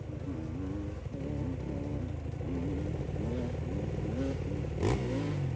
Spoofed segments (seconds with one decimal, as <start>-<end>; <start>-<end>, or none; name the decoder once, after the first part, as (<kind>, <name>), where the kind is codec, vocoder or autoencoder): none